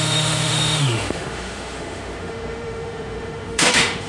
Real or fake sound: fake